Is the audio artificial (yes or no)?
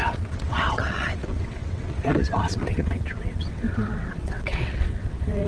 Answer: yes